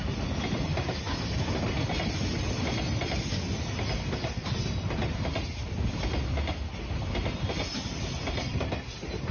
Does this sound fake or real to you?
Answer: real